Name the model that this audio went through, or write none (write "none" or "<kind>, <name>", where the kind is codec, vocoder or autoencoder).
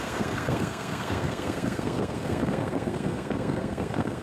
codec, SNAC